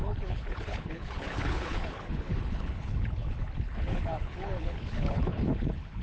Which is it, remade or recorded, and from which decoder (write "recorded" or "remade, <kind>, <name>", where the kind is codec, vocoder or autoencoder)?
remade, codec, HILCodec